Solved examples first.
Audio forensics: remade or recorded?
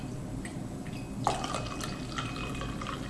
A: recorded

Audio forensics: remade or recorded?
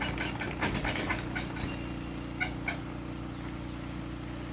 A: recorded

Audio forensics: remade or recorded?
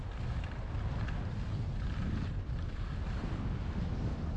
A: recorded